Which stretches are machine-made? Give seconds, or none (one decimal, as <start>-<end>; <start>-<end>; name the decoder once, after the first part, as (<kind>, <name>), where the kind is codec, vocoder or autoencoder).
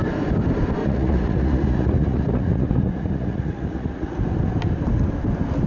0.8-4.2 (vocoder, Vocos)